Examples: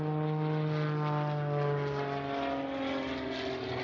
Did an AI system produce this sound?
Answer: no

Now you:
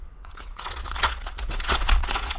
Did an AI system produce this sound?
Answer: yes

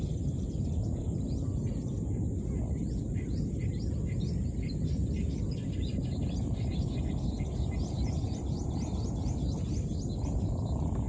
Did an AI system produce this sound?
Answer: no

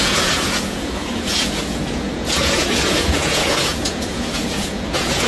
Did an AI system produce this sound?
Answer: yes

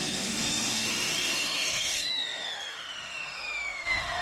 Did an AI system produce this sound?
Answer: yes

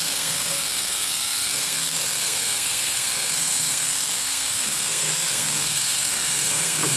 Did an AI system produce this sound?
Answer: yes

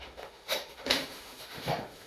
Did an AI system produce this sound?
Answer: yes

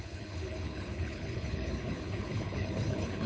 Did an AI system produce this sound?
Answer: yes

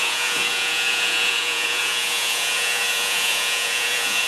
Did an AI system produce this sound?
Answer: yes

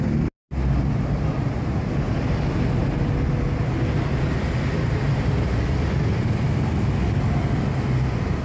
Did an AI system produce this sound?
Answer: no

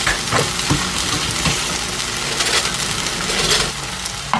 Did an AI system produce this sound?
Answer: no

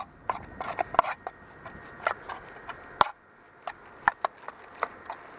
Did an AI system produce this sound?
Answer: no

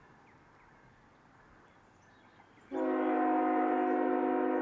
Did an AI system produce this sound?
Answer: no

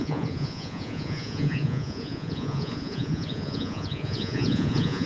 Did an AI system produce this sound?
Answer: yes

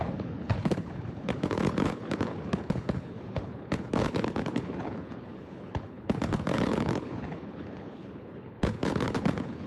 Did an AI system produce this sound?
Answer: yes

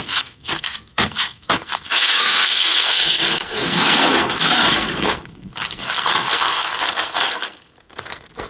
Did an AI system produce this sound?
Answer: yes